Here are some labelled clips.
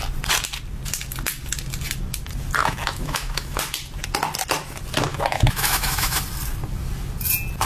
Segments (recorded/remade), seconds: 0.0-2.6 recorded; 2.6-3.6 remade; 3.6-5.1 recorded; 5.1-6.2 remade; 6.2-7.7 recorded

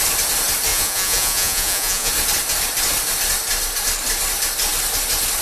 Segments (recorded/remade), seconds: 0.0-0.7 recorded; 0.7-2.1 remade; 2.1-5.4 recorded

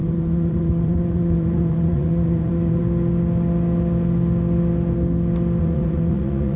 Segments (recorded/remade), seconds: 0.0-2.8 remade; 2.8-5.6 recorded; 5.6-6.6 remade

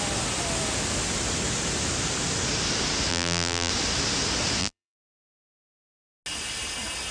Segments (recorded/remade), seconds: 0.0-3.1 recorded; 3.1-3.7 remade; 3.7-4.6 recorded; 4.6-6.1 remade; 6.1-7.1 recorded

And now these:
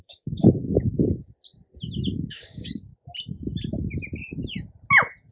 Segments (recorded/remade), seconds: 0.0-0.4 remade; 0.4-2.3 recorded; 2.3-2.9 remade; 2.9-5.3 recorded

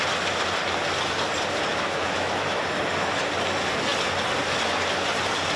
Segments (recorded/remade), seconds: 0.0-1.7 recorded; 1.7-2.6 remade; 2.6-5.6 recorded